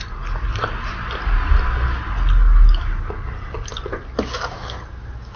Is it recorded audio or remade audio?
recorded